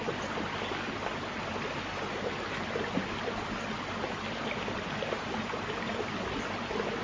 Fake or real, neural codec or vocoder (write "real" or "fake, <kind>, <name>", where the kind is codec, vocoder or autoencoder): real